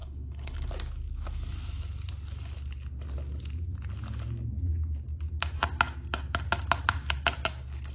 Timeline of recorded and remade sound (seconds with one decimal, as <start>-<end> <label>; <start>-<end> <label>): 0.0-0.7 remade; 0.7-7.9 recorded